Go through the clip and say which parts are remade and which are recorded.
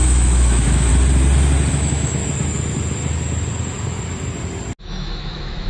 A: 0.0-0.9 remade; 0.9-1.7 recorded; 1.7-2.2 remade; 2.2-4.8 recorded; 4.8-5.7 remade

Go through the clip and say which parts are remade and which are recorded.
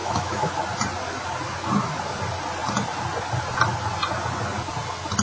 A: 0.0-0.5 remade; 0.5-5.2 recorded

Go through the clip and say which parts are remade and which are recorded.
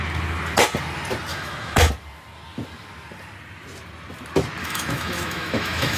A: 0.0-1.3 recorded; 1.3-1.9 remade; 1.9-4.6 recorded; 4.6-6.0 remade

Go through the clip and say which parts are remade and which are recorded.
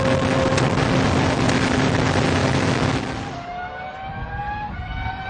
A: 0.0-2.4 recorded; 2.4-3.0 remade; 3.0-5.3 recorded